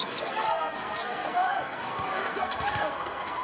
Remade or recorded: remade